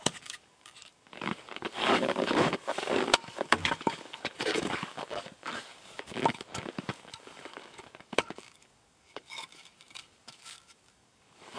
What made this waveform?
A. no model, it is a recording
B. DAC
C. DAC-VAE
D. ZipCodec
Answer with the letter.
B